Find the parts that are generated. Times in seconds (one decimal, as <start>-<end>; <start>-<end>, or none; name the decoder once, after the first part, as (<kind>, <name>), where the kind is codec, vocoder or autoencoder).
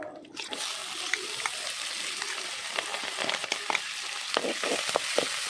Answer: none